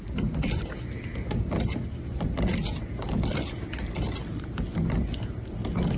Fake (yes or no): no